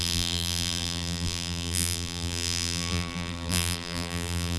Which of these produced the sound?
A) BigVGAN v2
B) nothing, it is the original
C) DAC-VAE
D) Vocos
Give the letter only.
A